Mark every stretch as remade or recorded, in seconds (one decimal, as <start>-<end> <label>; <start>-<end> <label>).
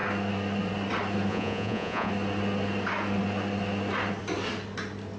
0.0-1.3 recorded; 1.3-2.1 remade; 2.1-5.2 recorded